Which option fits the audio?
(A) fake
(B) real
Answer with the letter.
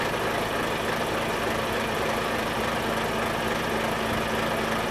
B